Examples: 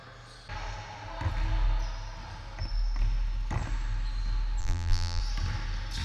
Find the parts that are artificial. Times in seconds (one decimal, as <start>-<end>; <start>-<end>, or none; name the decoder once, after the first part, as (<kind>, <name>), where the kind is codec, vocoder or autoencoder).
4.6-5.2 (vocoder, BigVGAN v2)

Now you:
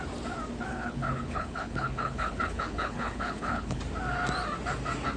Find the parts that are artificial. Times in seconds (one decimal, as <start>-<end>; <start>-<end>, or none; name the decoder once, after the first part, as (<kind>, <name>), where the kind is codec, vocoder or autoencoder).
0.7-3.8 (codec, HILCodec)

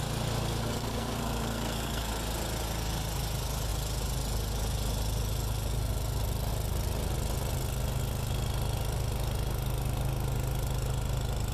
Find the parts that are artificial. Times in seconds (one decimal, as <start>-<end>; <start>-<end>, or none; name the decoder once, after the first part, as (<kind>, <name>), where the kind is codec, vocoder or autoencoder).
0.4-2.1 (codec, SNAC)

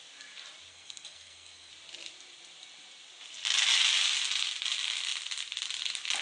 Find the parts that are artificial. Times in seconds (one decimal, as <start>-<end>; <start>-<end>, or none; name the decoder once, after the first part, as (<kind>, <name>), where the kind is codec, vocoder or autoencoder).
0.7-1.7 (codec, SNAC)

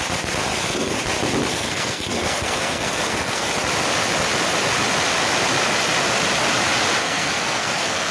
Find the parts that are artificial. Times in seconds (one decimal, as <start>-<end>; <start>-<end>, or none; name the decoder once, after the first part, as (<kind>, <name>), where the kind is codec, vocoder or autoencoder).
0.5-1.0 (codec, SNAC); 1.5-3.5; 7.0-8.1

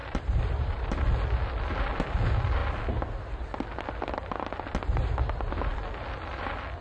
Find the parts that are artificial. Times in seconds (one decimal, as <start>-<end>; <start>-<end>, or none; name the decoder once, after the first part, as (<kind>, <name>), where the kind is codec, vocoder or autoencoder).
0.0-1.0 (vocoder, BigVGAN v2)

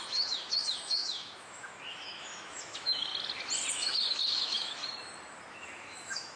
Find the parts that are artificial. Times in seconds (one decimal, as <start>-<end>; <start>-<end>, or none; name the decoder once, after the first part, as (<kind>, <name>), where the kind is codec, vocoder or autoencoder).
0.0-3.1 (autoencoder, DAC-VAE); 3.7-4.8; 5.5-6.4